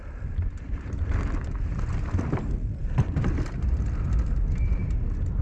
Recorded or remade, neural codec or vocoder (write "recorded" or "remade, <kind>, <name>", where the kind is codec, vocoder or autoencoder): recorded